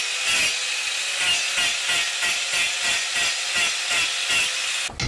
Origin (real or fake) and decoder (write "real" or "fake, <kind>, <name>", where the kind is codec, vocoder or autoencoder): real